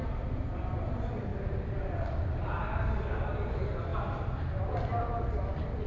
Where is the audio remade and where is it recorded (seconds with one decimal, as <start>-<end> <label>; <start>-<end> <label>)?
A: 0.0-1.3 recorded; 1.3-2.6 remade; 2.6-5.9 recorded